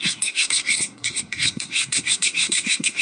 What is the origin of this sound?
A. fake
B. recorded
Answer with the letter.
A